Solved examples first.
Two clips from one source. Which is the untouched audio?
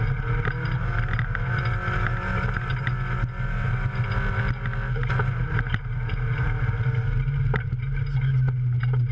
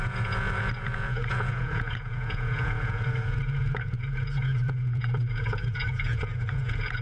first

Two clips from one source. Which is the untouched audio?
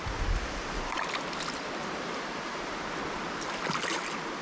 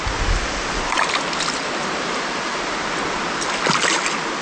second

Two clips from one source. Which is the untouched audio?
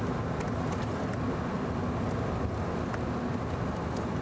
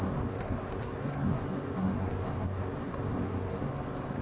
first